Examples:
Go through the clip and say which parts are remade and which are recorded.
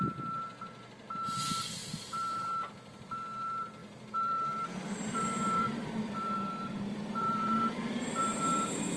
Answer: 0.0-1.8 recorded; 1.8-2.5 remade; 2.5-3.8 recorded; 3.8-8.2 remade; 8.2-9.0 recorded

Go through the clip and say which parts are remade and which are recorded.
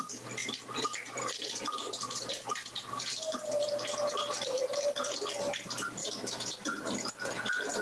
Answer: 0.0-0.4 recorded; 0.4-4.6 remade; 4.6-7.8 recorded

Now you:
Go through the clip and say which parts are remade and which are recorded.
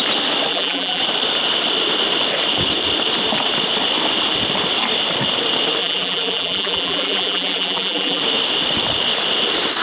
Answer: 0.0-0.5 recorded; 0.5-1.0 remade; 1.0-5.8 recorded; 5.8-8.2 remade; 8.2-9.8 recorded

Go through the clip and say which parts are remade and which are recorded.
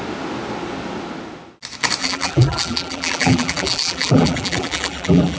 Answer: 0.0-2.0 recorded; 2.0-5.4 remade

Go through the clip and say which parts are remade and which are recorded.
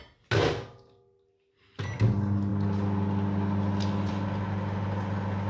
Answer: 0.0-5.5 recorded